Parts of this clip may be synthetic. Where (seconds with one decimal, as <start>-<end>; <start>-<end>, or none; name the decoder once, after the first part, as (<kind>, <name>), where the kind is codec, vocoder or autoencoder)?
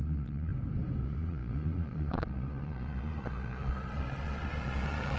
0.0-0.5 (vocoder, Vocos); 1.0-5.2